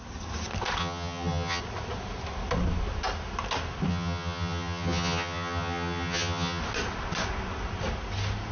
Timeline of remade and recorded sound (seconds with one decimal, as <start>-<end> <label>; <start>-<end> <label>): 0.0-0.8 recorded; 0.8-1.6 remade; 1.6-3.9 recorded; 3.9-6.6 remade; 6.6-8.5 recorded